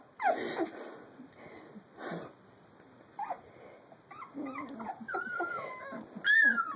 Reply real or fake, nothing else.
real